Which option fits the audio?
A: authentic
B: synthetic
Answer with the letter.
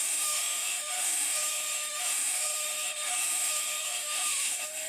B